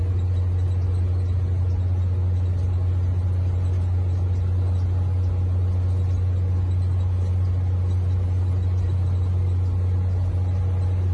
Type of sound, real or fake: real